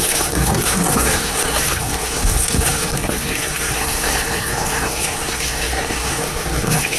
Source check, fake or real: fake